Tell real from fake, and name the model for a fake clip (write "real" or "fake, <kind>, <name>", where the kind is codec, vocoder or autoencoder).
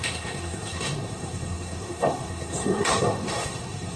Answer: fake, codec, SNAC